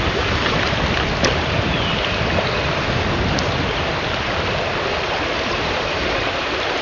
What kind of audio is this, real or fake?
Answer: real